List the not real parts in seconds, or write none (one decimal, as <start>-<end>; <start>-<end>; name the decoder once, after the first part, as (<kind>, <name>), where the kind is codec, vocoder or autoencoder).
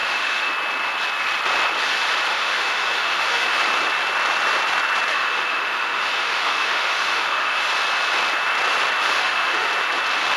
0.0-0.5 (autoencoder, DAC-VAE); 2.3-3.6; 5.1-7.7; 9.0-9.7